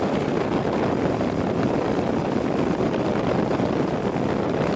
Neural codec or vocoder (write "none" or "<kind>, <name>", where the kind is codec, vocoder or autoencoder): none